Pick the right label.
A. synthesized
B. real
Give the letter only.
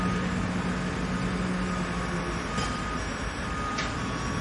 B